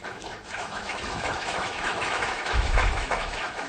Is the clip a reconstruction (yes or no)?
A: yes